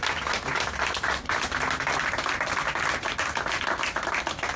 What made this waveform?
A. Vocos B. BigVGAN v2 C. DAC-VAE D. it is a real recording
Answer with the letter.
D